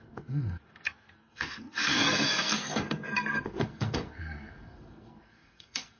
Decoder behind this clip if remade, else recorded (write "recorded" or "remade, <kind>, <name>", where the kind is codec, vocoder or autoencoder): remade, codec, SNAC